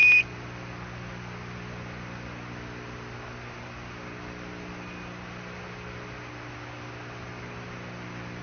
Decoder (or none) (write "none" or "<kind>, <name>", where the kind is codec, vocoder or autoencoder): none